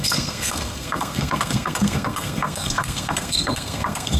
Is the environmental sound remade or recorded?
remade